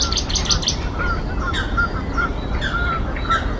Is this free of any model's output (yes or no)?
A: yes